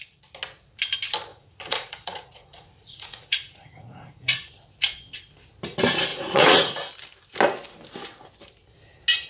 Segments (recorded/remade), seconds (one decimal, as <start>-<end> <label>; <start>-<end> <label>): 0.0-1.3 recorded; 1.3-4.5 remade; 4.5-6.1 recorded; 6.1-6.9 remade; 6.9-9.3 recorded

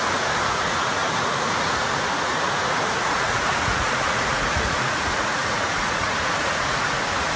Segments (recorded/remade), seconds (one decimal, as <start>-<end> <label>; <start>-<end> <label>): 0.0-7.4 remade

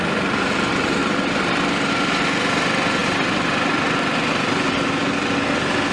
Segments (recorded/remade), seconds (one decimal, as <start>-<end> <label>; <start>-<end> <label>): 0.0-1.0 recorded; 1.0-1.9 remade; 1.9-3.0 recorded; 3.0-5.5 remade; 5.5-5.9 recorded

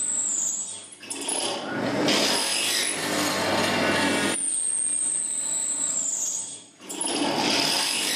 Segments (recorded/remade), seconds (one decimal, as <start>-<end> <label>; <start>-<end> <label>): 0.0-5.6 recorded; 5.6-6.9 remade; 6.9-8.2 recorded

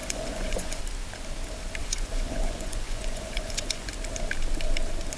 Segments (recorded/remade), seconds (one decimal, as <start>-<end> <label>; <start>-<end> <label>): 0.0-0.8 remade; 0.8-1.8 recorded; 1.8-3.9 remade; 3.9-5.2 recorded

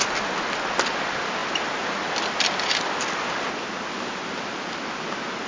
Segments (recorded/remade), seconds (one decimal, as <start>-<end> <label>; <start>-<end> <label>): 0.0-5.5 recorded

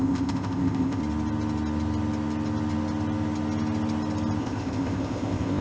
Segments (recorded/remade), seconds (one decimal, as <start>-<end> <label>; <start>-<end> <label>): 0.0-1.0 remade; 1.0-4.4 recorded; 4.4-5.6 remade

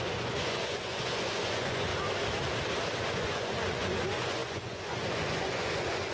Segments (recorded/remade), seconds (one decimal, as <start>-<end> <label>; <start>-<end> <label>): 0.0-1.9 remade; 1.9-3.0 recorded; 3.0-6.1 remade